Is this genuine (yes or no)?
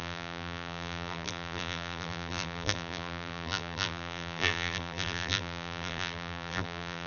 no